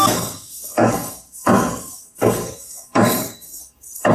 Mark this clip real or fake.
fake